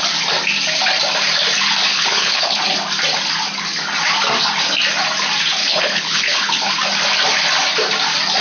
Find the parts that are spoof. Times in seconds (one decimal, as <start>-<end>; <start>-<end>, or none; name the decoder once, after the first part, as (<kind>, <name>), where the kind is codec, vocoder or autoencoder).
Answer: 1.9-2.6 (codec, HILCodec); 5.6-6.7